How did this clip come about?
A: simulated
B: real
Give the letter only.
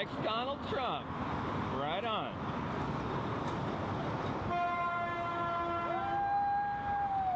B